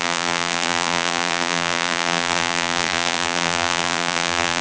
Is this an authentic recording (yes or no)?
no